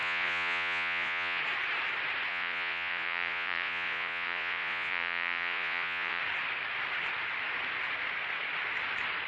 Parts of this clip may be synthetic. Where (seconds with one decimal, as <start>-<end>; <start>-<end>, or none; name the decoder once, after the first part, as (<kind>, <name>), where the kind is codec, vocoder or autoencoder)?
0.0-1.4 (vocoder, Vocos); 2.3-6.2